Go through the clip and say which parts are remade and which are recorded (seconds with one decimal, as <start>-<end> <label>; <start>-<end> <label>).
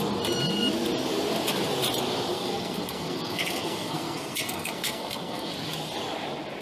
0.0-2.3 recorded; 2.3-5.5 remade; 5.5-6.6 recorded